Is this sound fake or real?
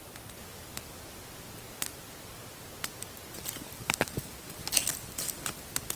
real